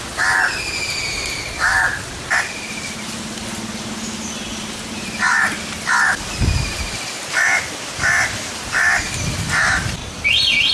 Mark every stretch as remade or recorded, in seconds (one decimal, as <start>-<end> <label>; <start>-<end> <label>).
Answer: 0.0-1.7 recorded; 1.7-2.5 remade; 2.5-10.0 recorded; 10.0-10.7 remade